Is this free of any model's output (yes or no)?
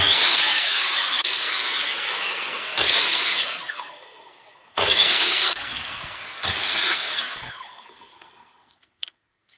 no